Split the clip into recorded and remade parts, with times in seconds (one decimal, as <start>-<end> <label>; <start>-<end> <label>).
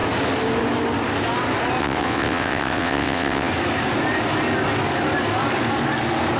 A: 0.0-1.8 recorded; 1.8-3.5 remade; 3.5-6.4 recorded